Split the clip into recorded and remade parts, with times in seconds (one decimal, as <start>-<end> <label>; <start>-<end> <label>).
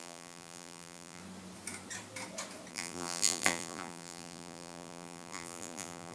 0.0-1.2 remade; 1.2-2.7 recorded; 2.7-6.1 remade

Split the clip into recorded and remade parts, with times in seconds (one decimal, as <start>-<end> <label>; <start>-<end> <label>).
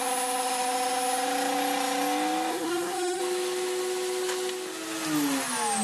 0.0-2.5 recorded; 2.5-3.2 remade; 3.2-5.8 recorded